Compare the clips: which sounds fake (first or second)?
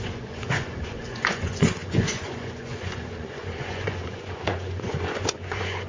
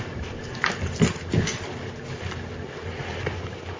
first